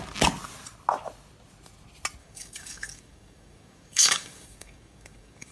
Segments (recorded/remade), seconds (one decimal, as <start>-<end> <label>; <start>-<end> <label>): 0.0-2.2 recorded; 2.2-5.5 remade